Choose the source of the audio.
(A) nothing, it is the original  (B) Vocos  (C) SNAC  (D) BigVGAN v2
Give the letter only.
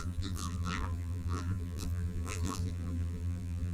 D